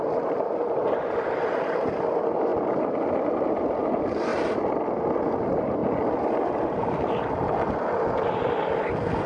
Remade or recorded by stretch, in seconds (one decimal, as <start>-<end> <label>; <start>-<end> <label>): 0.0-9.3 recorded